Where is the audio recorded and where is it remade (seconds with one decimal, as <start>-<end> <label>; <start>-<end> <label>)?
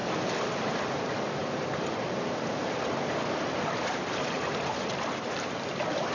0.0-1.4 recorded; 1.4-5.1 remade; 5.1-6.1 recorded